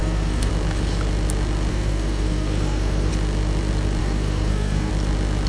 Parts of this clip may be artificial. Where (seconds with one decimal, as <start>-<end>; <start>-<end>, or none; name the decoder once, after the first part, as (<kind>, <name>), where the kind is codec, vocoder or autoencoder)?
0.0-0.5 (codec, SNAC); 1.7-3.1; 4.0-4.9